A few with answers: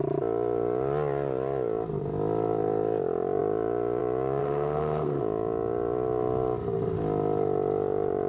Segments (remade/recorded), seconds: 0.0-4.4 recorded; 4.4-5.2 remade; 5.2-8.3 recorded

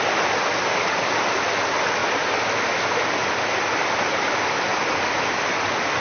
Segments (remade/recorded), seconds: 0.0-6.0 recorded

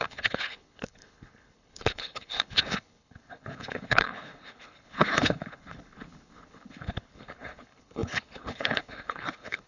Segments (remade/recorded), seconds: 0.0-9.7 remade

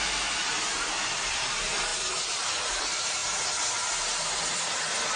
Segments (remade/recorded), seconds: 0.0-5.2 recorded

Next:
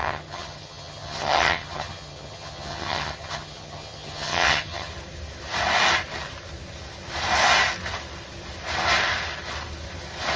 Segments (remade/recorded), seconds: 0.0-4.9 remade; 4.9-10.4 recorded